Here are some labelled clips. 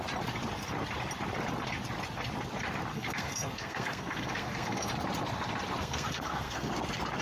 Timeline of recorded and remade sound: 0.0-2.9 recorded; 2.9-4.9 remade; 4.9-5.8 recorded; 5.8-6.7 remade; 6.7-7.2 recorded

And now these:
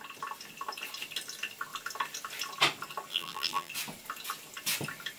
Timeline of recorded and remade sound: 0.0-3.1 recorded; 3.1-3.7 remade; 3.7-5.2 recorded

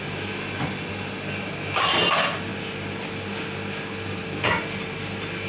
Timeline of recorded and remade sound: 0.0-5.5 recorded

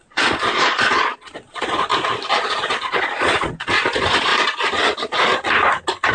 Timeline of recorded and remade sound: 0.0-1.9 remade; 1.9-2.4 recorded; 2.4-4.3 remade; 4.3-6.1 recorded